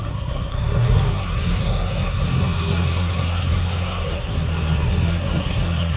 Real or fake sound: fake